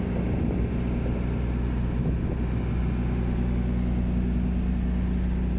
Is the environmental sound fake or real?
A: real